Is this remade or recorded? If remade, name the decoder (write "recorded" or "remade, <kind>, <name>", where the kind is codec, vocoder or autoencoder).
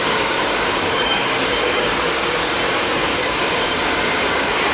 remade, codec, DAC